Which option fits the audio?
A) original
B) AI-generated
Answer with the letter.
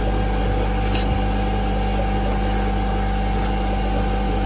A